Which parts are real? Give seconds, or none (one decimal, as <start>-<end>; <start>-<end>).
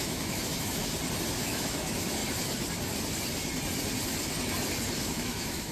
0.8-1.4; 2.2-5.0